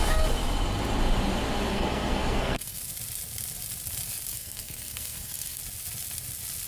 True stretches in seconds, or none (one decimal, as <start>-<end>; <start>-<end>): 0.0-1.7; 2.8-4.3; 5.6-6.7